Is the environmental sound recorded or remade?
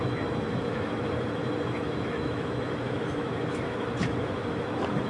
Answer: remade